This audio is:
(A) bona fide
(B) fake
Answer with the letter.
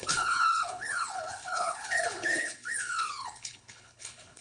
B